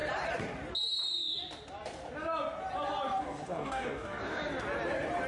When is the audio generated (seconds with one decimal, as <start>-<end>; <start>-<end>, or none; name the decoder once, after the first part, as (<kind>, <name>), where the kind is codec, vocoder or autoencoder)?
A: 3.2-4.4 (codec, DAC)